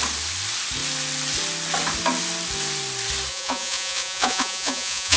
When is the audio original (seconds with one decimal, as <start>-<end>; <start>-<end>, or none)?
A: 0.0-3.3